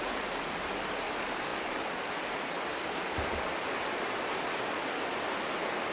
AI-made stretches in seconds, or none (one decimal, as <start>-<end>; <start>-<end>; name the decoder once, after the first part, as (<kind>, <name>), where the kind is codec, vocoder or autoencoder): none